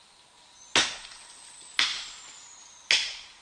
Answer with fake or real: real